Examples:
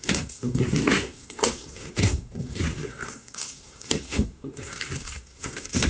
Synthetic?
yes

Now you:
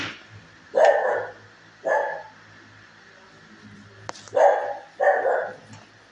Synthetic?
no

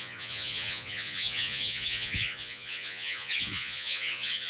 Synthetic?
yes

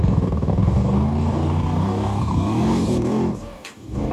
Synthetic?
yes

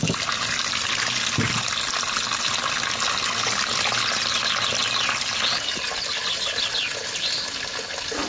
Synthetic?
no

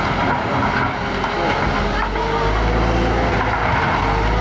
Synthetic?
no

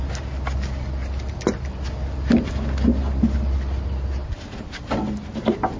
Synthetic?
no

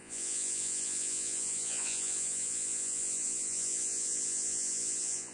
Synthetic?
yes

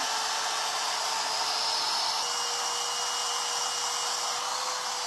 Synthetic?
no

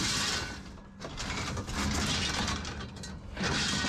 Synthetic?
no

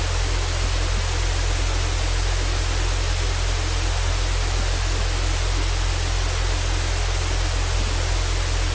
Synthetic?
no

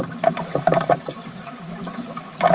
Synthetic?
no